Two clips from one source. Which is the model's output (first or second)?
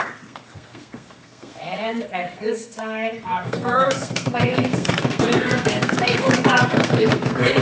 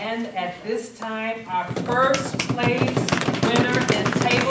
first